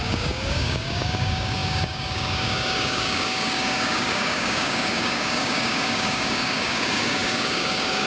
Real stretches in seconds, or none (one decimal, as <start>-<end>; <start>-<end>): none